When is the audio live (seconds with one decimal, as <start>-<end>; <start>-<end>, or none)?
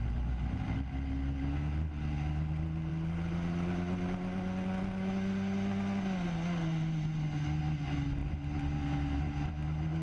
0.0-10.0